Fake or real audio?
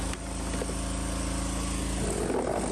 real